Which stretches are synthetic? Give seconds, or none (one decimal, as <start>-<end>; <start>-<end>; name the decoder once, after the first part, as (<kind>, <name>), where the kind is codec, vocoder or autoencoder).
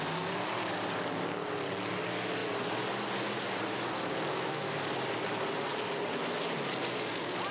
none